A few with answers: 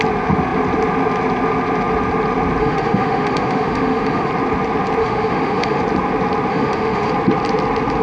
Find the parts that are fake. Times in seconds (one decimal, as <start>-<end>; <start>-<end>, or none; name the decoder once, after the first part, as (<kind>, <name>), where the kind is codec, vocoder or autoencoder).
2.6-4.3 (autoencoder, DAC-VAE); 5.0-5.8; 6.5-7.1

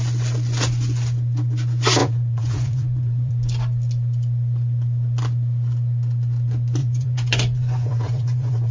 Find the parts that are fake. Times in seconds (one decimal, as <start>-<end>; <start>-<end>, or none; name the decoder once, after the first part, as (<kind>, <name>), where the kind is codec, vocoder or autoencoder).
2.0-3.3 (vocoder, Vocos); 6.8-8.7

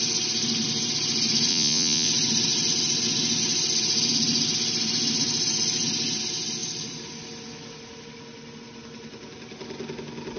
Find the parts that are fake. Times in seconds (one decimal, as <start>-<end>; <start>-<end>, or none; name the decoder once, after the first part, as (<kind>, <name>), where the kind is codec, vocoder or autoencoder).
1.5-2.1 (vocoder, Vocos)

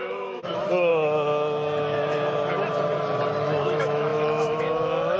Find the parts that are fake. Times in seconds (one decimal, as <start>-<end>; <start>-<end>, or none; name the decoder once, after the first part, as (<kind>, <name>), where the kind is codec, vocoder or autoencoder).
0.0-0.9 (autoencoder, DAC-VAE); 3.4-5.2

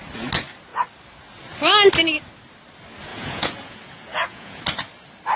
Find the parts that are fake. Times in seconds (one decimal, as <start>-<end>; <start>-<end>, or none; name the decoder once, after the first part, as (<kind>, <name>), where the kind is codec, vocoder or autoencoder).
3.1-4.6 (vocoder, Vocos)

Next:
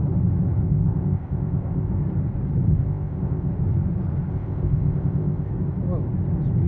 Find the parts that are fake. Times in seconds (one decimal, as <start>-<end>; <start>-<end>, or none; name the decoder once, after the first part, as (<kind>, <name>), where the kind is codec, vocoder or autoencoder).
0.6-1.9 (codec, ZipCodec); 2.7-3.5; 4.3-5.5